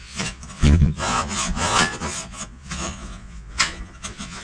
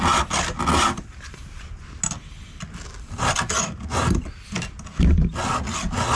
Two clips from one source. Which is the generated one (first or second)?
first